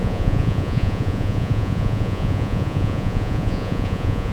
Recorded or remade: remade